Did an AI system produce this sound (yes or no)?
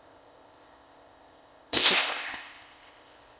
yes